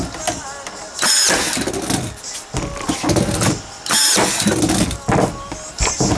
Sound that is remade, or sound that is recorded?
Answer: recorded